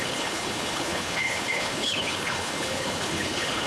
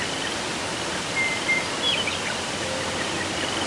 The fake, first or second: first